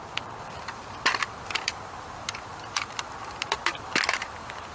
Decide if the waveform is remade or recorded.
remade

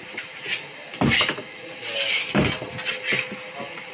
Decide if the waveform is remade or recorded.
recorded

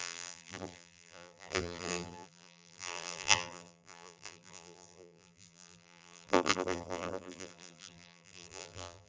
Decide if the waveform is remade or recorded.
remade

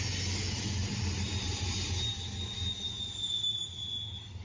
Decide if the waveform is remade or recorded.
recorded